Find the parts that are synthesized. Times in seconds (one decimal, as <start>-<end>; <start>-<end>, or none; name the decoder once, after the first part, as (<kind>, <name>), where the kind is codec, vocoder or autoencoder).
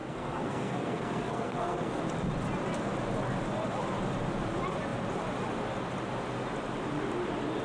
0.0-2.0 (codec, SNAC)